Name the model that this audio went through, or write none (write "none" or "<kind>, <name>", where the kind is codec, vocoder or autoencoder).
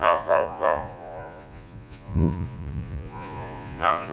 vocoder, Vocos